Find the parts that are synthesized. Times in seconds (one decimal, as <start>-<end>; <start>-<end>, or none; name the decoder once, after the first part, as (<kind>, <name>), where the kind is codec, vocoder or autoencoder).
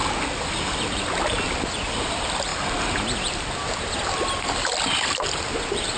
none